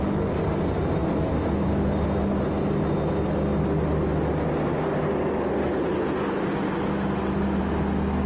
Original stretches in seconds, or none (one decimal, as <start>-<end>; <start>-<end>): 0.0-8.3